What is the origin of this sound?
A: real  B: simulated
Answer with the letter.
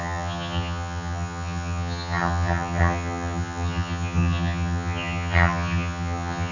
B